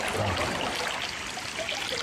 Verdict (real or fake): real